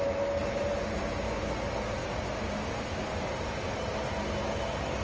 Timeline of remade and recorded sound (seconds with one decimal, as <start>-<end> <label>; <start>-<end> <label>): 0.0-0.4 recorded; 0.4-1.4 remade; 1.4-2.0 recorded; 2.0-4.2 remade; 4.2-5.0 recorded